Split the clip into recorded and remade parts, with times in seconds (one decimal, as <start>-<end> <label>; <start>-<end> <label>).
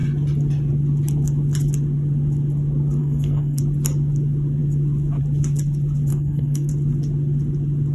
0.0-3.0 recorded; 3.0-3.6 remade; 3.6-6.1 recorded; 6.1-6.7 remade; 6.7-7.9 recorded